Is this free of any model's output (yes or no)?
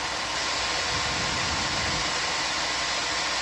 yes